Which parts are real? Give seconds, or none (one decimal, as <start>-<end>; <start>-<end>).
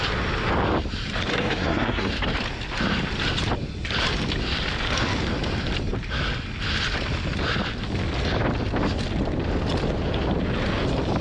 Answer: 0.0-1.3; 2.1-11.2